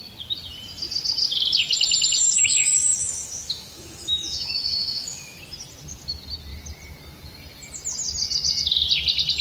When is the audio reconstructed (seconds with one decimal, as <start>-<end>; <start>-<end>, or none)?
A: 2.2-5.4